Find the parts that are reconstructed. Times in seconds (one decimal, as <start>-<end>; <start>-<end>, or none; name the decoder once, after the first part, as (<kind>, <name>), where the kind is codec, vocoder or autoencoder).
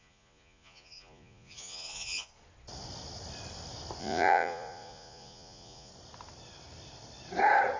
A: 0.0-2.3 (vocoder, Vocos); 4.0-5.9